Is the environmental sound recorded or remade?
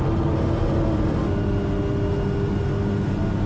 recorded